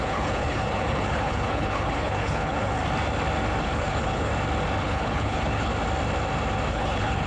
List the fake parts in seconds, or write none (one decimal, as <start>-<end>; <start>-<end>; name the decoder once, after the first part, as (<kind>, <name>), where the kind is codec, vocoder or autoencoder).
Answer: 0.0-2.8 (codec, HILCodec); 3.6-4.3; 4.8-5.7; 6.7-7.3